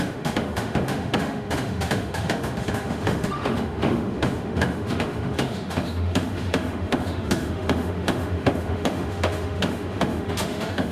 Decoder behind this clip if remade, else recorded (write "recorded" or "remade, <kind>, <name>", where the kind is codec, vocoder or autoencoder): remade, autoencoder, DAC-VAE